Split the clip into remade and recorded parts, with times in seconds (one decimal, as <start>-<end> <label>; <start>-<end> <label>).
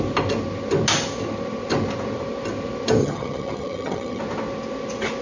0.0-3.0 recorded; 3.0-4.2 remade; 4.2-5.2 recorded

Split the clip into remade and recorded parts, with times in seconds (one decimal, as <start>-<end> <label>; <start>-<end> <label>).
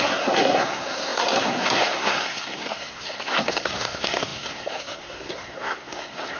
0.0-6.4 remade